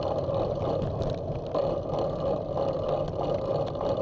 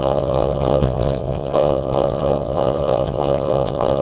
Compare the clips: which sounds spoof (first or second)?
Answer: second